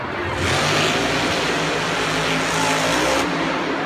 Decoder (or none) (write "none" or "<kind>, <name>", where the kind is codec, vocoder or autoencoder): none